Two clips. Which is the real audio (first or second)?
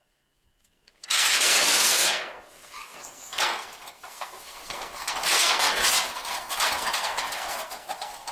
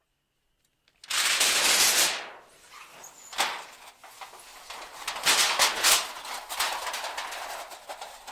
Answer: second